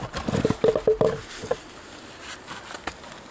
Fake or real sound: real